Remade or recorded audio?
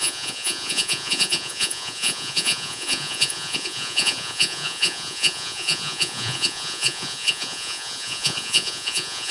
remade